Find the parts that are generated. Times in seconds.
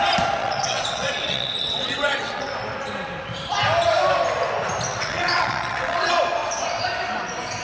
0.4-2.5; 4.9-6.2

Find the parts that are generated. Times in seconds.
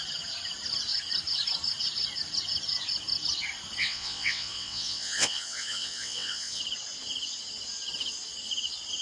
3.8-6.6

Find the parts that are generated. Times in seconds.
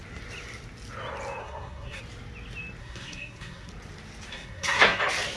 1.4-2.0; 2.8-3.7; 4.3-5.0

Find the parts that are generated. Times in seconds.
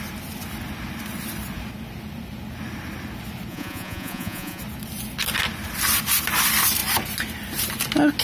3.5-4.6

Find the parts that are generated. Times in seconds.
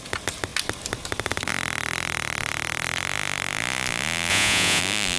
4.3-4.8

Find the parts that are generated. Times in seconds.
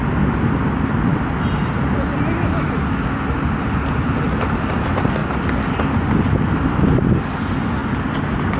none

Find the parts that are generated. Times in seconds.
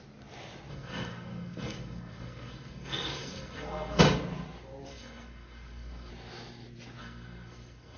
0.7-4.0; 4.9-6.1; 7.0-8.0